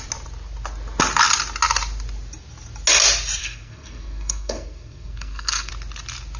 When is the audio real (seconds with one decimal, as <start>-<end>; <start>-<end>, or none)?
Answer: 0.0-3.4; 5.7-6.4